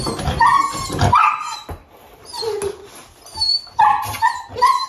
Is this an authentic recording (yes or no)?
yes